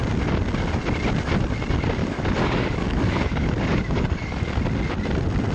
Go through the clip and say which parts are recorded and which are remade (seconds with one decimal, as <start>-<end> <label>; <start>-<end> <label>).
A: 0.0-2.0 recorded; 2.0-4.6 remade; 4.6-5.5 recorded

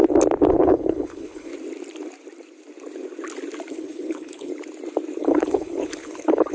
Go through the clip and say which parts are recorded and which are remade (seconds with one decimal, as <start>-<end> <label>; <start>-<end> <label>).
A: 0.0-0.5 recorded; 0.5-1.5 remade; 1.5-3.7 recorded; 3.7-4.5 remade; 4.5-5.2 recorded; 5.2-6.5 remade